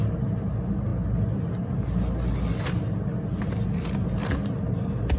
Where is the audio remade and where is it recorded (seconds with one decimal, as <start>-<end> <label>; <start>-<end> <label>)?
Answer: 0.0-5.2 recorded